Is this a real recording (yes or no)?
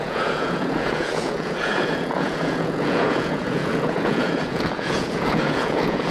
no